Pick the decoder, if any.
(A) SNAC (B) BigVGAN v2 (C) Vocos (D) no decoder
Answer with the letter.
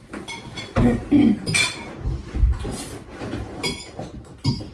D